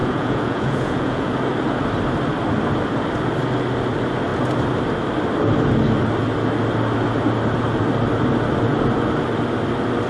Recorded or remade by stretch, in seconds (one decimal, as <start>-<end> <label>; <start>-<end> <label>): 0.0-1.3 remade; 1.3-10.1 recorded